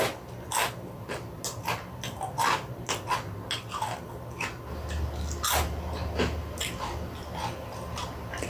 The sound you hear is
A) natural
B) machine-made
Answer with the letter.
A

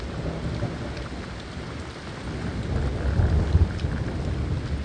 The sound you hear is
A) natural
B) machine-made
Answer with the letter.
A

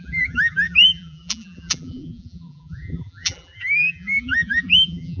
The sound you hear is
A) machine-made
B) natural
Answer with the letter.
A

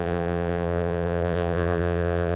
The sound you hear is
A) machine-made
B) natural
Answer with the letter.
A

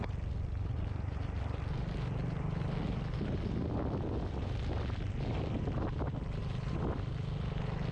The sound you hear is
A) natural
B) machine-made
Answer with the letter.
A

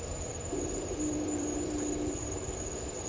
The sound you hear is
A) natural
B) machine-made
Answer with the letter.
B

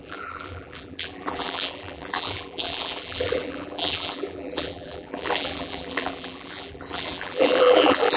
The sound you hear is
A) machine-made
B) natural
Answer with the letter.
A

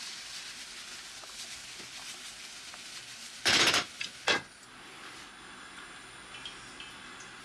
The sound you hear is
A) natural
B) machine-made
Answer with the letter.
A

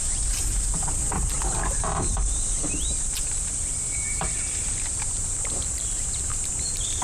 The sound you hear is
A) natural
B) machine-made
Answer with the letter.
B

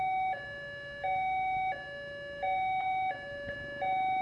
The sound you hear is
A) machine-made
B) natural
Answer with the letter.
B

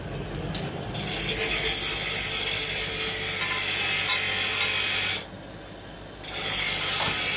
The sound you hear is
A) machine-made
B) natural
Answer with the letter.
B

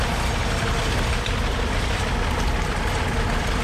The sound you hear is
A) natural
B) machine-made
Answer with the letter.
B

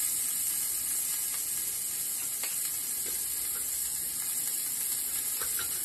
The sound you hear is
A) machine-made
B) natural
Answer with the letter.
B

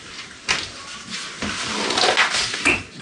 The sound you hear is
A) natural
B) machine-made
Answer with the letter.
A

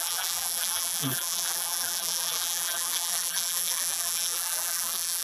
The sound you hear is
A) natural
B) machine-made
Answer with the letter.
B